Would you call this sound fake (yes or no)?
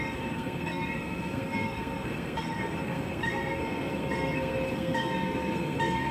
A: yes